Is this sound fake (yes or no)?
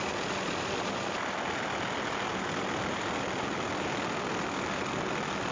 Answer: no